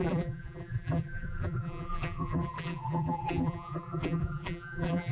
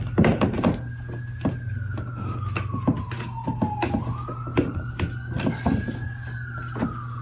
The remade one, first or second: first